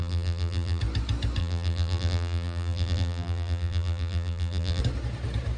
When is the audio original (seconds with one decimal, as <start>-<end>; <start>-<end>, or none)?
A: 0.8-1.4; 4.8-5.6